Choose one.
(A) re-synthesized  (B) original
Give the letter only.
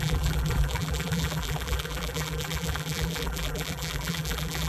A